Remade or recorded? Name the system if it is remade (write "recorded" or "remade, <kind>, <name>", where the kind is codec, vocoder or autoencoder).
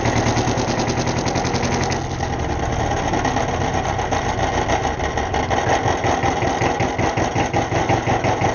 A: recorded